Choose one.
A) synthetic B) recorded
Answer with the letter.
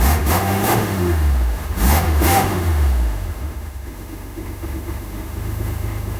A